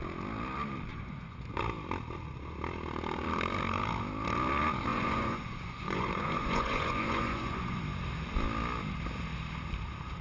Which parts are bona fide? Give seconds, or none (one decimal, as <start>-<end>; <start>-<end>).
0.0-0.9; 1.6-4.9; 7.8-10.2